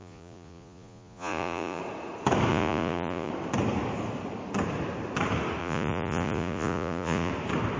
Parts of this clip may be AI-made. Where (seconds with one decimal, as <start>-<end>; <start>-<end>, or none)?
0.0-1.8; 2.5-3.3; 5.6-7.3